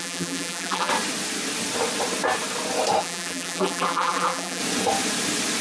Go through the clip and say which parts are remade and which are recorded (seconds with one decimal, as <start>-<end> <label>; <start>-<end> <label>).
0.0-0.9 remade; 0.9-3.0 recorded; 3.0-4.6 remade; 4.6-5.6 recorded